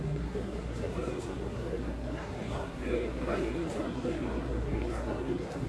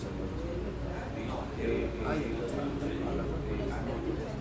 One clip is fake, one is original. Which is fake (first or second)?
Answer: first